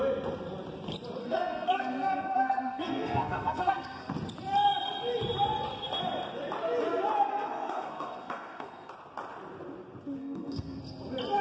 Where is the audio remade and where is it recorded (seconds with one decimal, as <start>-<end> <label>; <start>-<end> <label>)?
0.0-1.2 recorded; 1.2-4.1 remade; 4.1-7.3 recorded; 7.3-8.9 remade; 8.9-10.2 recorded; 10.2-10.8 remade; 10.8-11.4 recorded